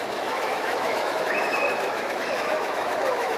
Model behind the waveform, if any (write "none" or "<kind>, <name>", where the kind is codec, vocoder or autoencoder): autoencoder, DAC-VAE